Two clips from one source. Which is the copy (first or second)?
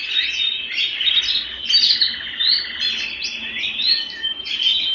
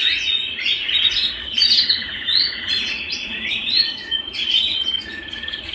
second